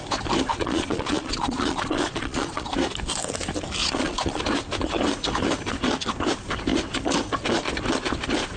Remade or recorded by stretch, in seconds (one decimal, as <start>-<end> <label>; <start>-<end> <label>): 0.0-0.5 recorded; 0.5-2.7 remade; 2.7-3.8 recorded; 3.8-4.4 remade; 4.4-8.6 recorded